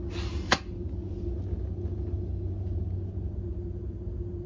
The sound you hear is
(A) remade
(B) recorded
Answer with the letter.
B